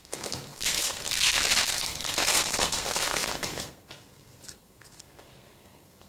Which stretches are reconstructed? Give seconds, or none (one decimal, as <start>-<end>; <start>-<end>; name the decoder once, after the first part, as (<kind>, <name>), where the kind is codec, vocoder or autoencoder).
0.0-6.1 (codec, SNAC)